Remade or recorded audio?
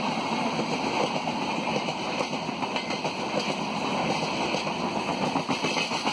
recorded